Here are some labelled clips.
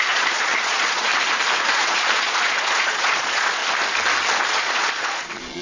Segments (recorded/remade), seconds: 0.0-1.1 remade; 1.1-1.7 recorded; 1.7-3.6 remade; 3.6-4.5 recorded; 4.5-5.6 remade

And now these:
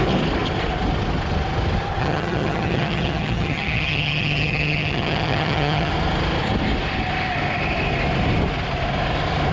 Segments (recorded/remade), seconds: 0.0-2.0 recorded; 2.0-5.9 remade; 5.9-9.5 recorded

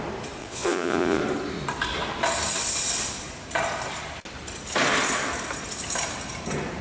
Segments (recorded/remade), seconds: 0.0-0.4 recorded; 0.4-1.2 remade; 1.2-6.8 recorded

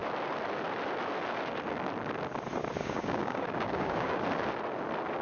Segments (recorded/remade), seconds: 0.0-2.8 recorded; 2.8-4.2 remade; 4.2-5.2 recorded

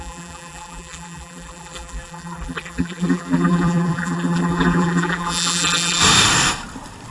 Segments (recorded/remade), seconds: 0.0-6.0 remade; 6.0-7.1 recorded

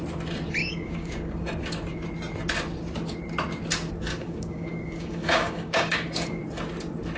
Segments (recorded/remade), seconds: 0.0-0.6 recorded; 0.6-1.4 remade; 1.4-4.1 recorded; 4.1-6.4 remade; 6.4-7.2 recorded

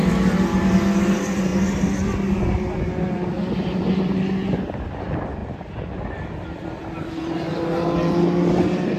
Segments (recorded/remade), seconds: 0.0-9.0 recorded